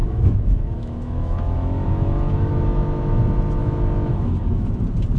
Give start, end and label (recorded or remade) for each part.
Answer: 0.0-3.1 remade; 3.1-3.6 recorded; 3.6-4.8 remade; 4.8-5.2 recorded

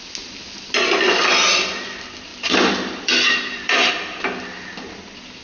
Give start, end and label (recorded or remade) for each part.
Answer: 0.0-2.3 recorded; 2.3-3.9 remade; 3.9-5.4 recorded

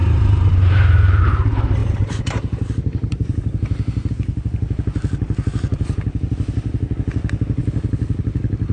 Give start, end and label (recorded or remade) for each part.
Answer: 0.0-1.2 remade; 1.2-1.8 recorded; 1.8-4.1 remade; 4.1-8.7 recorded

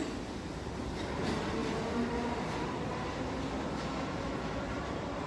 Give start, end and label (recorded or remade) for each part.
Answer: 0.0-5.3 recorded

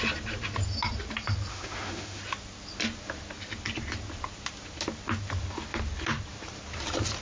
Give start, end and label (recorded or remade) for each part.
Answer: 0.0-1.5 recorded; 1.5-2.2 remade; 2.2-7.2 recorded

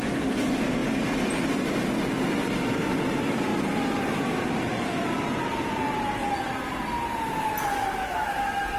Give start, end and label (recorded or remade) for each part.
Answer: 0.0-8.8 recorded

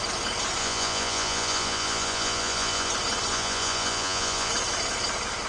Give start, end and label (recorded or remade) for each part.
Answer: 0.0-0.6 recorded; 0.6-2.9 remade; 2.9-3.3 recorded; 3.3-4.5 remade; 4.5-5.5 recorded

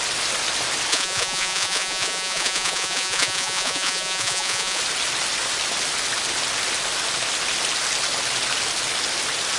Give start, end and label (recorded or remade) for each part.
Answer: 0.0-0.9 recorded; 0.9-4.8 remade; 4.8-9.6 recorded